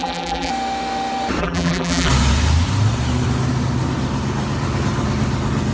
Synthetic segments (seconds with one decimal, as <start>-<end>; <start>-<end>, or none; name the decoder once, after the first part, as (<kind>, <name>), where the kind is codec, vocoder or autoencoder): 0.0-0.5 (vocoder, BigVGAN v2); 1.4-2.1